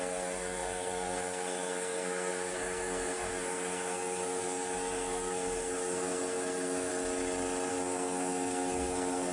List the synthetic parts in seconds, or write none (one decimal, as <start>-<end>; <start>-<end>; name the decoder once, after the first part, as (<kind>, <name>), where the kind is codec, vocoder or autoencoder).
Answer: 0.0-6.9 (codec, SNAC); 7.7-9.3